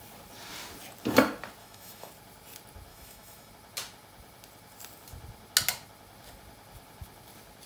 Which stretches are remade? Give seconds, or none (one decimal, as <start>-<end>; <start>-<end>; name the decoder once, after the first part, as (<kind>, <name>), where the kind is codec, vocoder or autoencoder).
1.6-2.1 (autoencoder, DAC-VAE); 2.9-3.5